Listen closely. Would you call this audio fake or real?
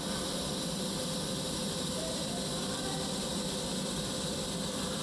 fake